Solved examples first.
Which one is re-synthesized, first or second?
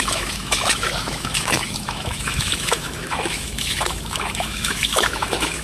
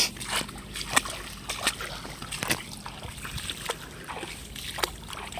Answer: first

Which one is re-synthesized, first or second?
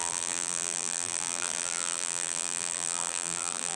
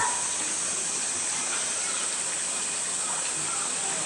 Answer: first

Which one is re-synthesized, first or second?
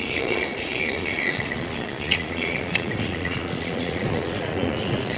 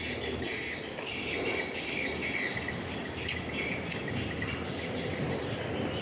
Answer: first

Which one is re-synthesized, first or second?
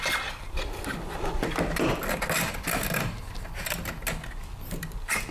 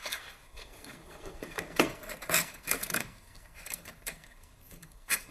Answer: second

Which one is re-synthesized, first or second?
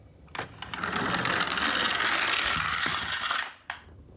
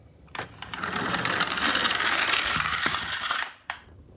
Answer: second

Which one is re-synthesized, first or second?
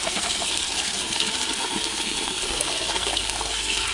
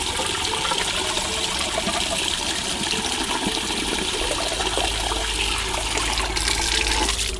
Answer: first